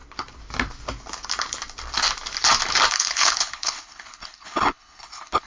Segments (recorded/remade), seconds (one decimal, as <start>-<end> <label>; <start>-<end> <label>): 0.0-2.9 recorded; 2.9-5.5 remade